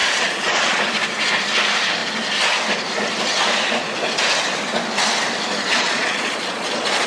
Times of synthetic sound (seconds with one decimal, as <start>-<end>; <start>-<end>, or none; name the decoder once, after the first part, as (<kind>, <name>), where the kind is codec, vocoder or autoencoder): 0.0-0.8 (vocoder, Vocos); 5.7-7.1